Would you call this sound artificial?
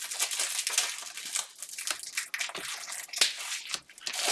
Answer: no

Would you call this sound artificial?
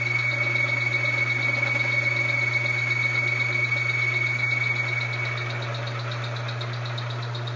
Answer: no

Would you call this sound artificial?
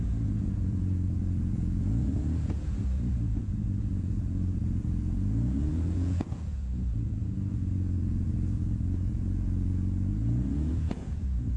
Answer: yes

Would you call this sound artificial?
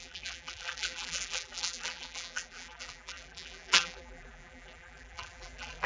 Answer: yes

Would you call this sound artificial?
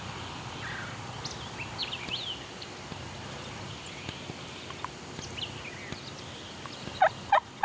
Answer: no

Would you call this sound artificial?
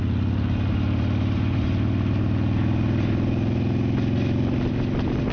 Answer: no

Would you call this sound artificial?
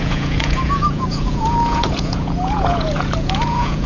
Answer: yes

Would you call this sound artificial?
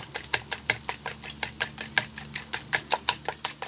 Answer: no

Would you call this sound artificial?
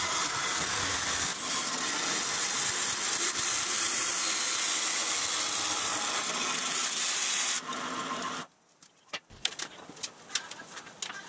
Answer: no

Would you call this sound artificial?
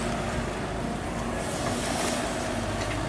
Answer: no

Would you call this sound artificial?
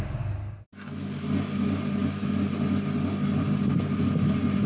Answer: no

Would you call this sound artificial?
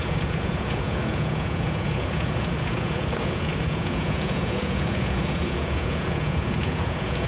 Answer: yes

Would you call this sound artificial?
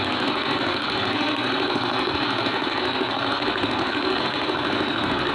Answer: yes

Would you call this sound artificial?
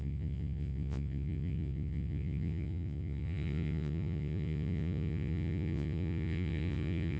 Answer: yes